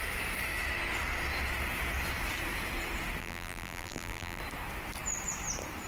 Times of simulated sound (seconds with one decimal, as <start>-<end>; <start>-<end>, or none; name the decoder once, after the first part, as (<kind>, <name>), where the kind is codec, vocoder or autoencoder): 3.2-4.4 (vocoder, BigVGAN v2)